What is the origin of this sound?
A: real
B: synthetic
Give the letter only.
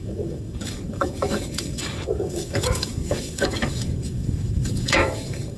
B